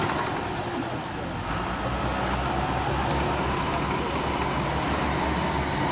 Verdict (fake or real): real